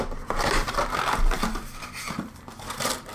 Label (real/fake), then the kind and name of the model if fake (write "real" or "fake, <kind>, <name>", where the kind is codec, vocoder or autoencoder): real